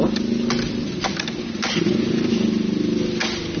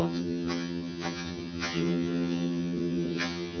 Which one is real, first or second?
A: first